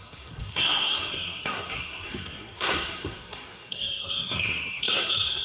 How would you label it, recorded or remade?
remade